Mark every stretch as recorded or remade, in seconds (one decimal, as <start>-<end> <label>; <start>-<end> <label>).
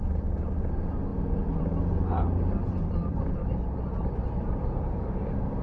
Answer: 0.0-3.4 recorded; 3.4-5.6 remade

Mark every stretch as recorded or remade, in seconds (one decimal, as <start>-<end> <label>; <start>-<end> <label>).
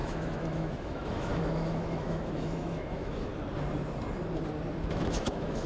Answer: 0.0-3.3 remade; 3.3-4.9 recorded; 4.9-5.7 remade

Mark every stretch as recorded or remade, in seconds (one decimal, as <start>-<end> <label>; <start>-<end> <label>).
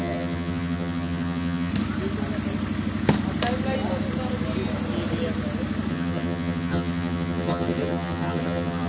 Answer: 0.0-1.7 remade; 1.7-5.9 recorded; 5.9-8.9 remade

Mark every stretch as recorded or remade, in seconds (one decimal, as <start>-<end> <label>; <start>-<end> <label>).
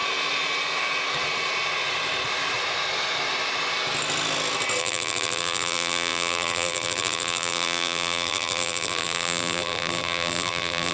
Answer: 0.0-4.8 recorded; 4.8-10.9 remade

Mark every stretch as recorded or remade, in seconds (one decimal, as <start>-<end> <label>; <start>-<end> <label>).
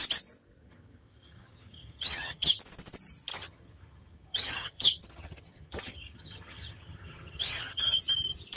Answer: 0.0-0.6 recorded; 0.6-2.6 remade; 2.6-3.3 recorded; 3.3-8.0 remade; 8.0-8.6 recorded